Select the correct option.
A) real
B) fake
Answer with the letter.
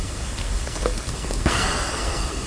B